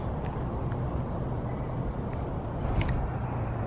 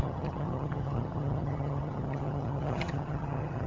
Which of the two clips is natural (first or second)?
first